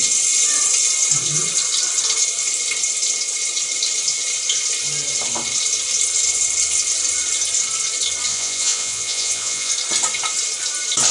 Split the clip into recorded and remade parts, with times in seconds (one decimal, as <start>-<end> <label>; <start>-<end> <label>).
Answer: 0.0-8.3 recorded; 8.3-9.7 remade; 9.7-11.1 recorded

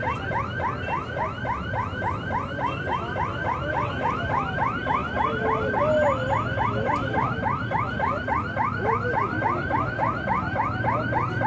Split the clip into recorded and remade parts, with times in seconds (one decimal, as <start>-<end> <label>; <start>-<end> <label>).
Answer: 0.0-11.5 recorded

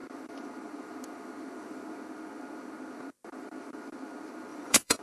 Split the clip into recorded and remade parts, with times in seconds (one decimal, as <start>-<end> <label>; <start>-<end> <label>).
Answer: 0.0-4.5 recorded; 4.5-5.0 remade

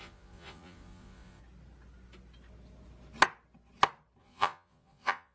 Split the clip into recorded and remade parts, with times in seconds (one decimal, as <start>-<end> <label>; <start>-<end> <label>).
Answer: 0.0-1.4 remade; 1.4-4.2 recorded; 4.2-5.3 remade

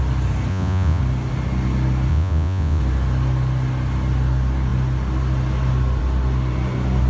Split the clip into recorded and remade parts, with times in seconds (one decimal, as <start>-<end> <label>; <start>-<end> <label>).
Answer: 0.0-0.5 recorded; 0.5-1.0 remade; 1.0-2.1 recorded; 2.1-2.8 remade; 2.8-7.1 recorded

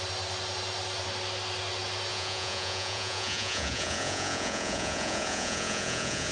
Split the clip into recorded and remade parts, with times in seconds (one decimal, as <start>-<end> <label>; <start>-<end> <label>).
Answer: 0.0-2.1 recorded; 2.1-6.3 remade

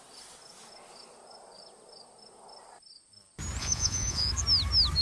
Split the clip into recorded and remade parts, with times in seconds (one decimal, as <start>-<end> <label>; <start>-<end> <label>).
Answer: 0.0-3.6 recorded; 3.6-4.3 remade; 4.3-5.0 recorded